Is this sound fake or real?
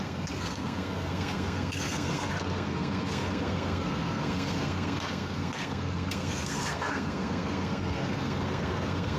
fake